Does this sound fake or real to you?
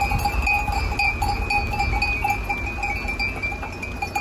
real